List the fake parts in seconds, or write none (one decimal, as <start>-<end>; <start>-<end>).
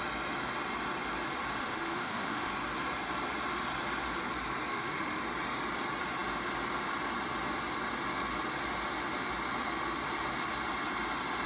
1.6-2.5; 4.7-5.2